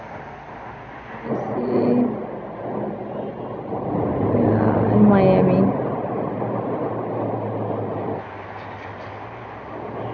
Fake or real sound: real